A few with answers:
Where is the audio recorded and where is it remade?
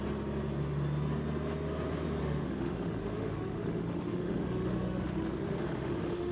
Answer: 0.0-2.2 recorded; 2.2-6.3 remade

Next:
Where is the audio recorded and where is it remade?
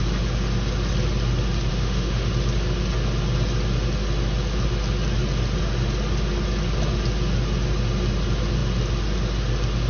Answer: 0.0-1.7 recorded; 1.7-2.3 remade; 2.3-9.9 recorded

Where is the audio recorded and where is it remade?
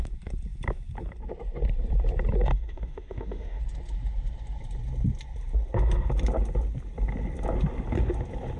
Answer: 0.0-2.5 recorded; 2.5-3.6 remade; 3.6-8.6 recorded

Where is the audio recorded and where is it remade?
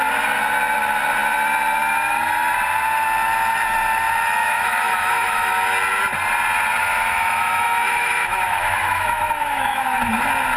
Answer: 0.0-4.4 recorded; 4.4-5.5 remade; 5.5-6.8 recorded; 6.8-10.1 remade; 10.1-10.6 recorded